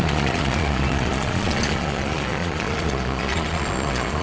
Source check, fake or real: fake